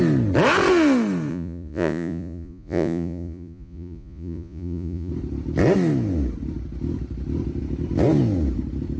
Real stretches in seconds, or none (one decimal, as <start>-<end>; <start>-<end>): 0.0-1.3; 5.1-9.0